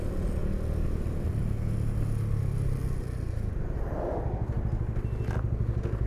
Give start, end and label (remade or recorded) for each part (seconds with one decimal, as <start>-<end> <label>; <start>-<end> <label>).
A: 0.0-6.1 recorded